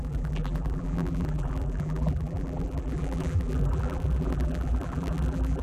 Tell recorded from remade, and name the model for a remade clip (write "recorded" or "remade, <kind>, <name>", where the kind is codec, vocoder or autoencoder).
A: remade, vocoder, BigVGAN v2